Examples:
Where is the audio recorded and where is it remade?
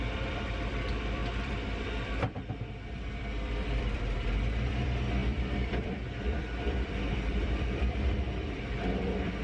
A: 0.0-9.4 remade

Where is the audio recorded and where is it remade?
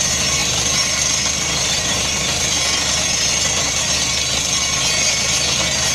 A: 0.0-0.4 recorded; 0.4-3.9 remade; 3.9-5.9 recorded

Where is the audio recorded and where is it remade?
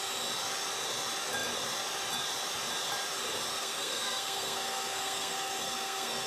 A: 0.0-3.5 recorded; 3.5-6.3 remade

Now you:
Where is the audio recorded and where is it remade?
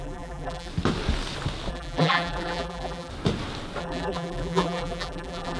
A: 0.0-0.7 remade; 0.7-1.7 recorded; 1.7-3.1 remade; 3.1-3.8 recorded; 3.8-5.6 remade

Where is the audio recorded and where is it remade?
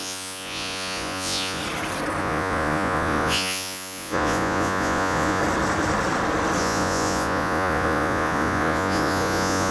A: 0.0-1.6 remade; 1.6-2.2 recorded; 2.2-5.4 remade; 5.4-6.6 recorded; 6.6-9.7 remade